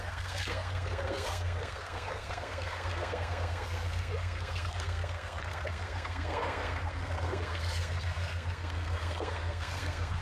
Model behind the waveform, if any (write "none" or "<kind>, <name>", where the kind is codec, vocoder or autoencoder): codec, SNAC